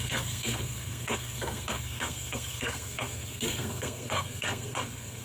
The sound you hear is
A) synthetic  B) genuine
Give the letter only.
A